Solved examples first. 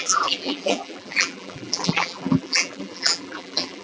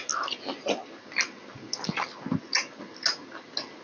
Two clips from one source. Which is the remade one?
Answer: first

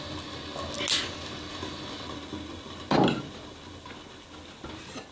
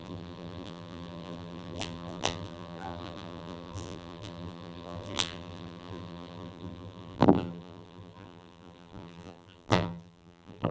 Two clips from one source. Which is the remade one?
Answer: second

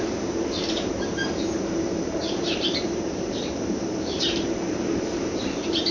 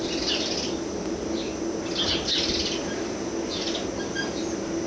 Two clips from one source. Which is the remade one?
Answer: first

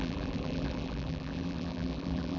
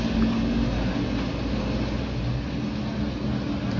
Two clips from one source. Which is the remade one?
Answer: first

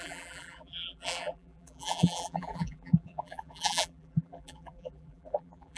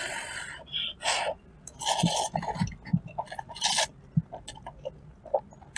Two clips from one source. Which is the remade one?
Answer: first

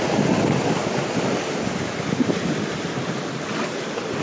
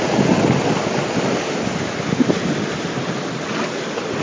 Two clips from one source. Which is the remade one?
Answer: first